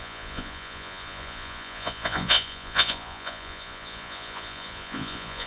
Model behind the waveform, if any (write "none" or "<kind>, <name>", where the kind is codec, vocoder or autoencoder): vocoder, Vocos